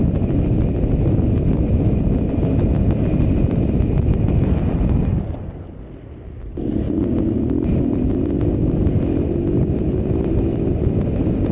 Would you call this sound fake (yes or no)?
no